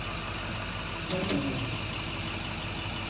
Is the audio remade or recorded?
recorded